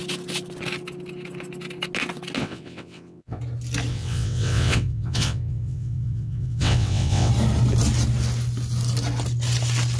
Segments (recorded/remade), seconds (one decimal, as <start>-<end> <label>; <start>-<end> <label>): 0.0-2.4 recorded; 2.4-3.4 remade; 3.4-3.9 recorded; 3.9-7.3 remade; 7.3-10.0 recorded